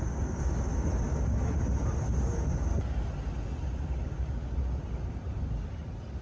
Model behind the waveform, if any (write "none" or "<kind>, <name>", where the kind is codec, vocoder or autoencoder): none